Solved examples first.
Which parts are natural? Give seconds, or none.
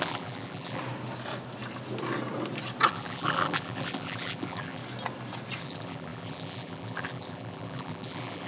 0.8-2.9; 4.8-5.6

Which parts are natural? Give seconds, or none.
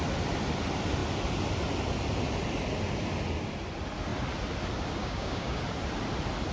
0.0-5.0; 5.6-6.5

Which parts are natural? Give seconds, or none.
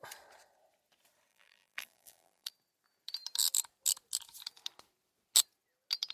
0.0-1.3; 2.5-6.1